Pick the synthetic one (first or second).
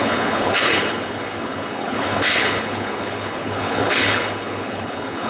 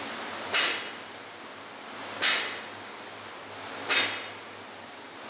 first